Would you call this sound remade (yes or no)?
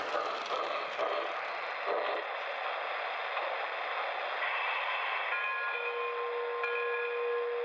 no